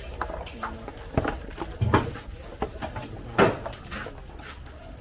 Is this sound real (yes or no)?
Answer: yes